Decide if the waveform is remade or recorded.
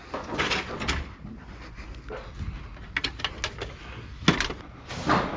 recorded